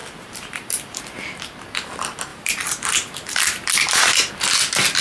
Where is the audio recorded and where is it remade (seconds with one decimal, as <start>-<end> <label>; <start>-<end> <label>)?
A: 0.0-1.0 remade; 1.0-2.3 recorded; 2.3-4.3 remade; 4.3-5.0 recorded